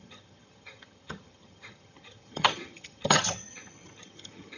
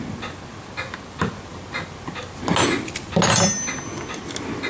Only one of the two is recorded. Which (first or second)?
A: second